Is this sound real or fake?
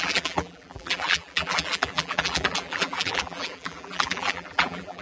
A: fake